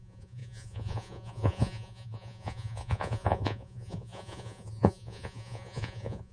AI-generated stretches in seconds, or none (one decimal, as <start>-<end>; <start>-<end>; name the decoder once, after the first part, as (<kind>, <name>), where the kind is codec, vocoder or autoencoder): 0.0-6.3 (vocoder, Vocos)